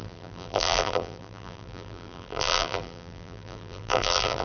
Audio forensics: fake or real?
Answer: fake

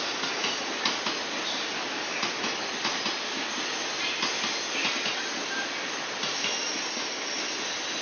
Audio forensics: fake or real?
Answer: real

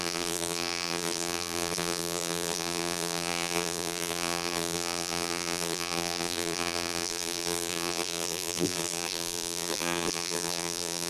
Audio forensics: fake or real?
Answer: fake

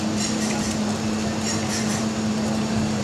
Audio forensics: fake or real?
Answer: real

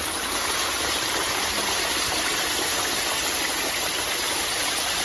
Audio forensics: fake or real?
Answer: fake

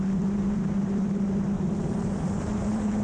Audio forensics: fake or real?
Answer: fake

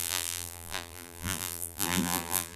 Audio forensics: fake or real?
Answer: fake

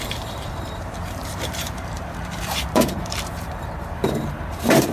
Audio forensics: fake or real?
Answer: fake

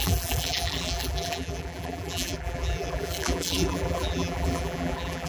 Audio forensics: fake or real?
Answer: fake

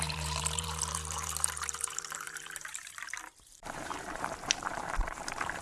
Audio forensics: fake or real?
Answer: fake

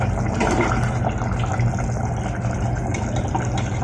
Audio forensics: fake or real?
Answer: real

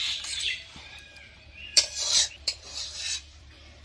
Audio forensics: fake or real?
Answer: fake